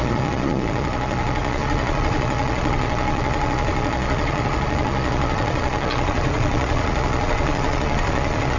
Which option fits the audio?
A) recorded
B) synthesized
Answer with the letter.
B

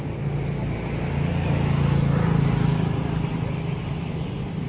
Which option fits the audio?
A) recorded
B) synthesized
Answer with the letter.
A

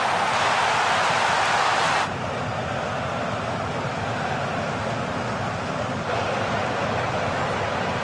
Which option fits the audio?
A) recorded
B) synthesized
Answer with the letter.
A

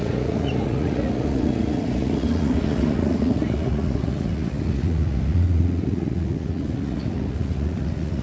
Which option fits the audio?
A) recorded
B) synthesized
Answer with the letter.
B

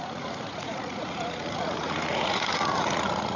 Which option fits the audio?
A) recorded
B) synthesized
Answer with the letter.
B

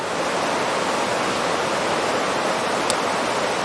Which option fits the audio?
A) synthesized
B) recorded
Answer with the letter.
B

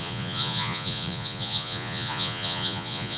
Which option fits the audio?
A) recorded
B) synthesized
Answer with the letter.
B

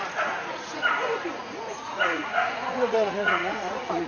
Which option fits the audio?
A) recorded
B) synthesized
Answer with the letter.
B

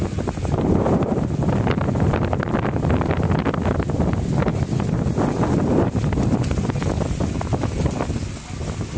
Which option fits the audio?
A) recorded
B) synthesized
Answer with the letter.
A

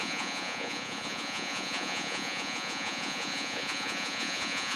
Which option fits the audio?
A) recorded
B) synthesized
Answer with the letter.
B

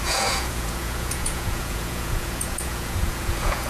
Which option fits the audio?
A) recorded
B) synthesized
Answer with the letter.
B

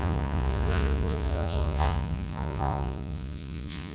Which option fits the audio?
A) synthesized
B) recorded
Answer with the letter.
A